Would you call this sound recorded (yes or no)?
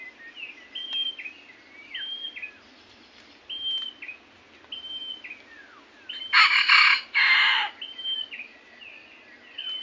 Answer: yes